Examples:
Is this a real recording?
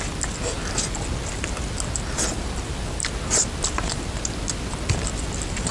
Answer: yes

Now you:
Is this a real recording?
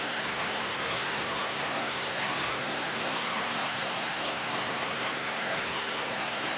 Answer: no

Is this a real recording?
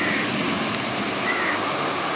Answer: yes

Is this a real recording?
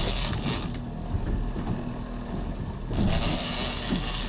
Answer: yes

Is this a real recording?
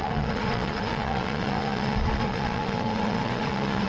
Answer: no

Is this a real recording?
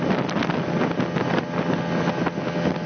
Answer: yes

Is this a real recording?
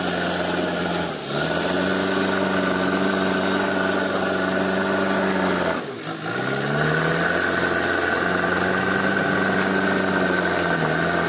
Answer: yes